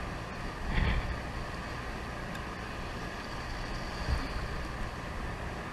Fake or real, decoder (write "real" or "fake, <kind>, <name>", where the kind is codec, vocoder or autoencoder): real